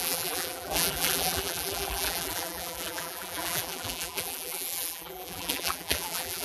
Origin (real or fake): fake